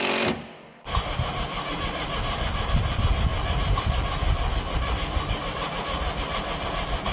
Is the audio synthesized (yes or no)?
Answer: no